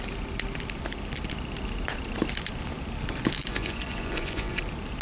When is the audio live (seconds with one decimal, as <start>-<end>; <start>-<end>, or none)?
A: 0.0-3.5; 4.6-5.0